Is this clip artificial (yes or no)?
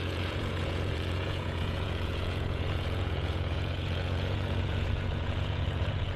yes